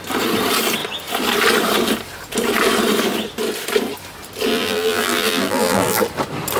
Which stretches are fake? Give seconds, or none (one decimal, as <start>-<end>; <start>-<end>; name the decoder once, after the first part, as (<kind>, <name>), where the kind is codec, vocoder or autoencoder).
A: 4.5-6.0 (vocoder, BigVGAN v2)